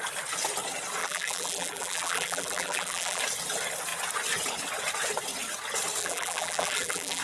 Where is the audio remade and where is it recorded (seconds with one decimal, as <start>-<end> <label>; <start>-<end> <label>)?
0.0-1.0 recorded; 1.0-3.2 remade; 3.2-6.0 recorded; 6.0-7.2 remade